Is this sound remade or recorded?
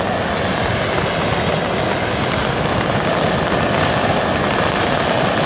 recorded